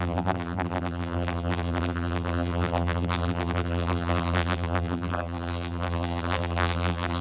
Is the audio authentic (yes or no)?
no